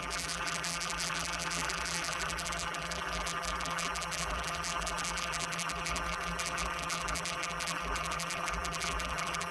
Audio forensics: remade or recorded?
remade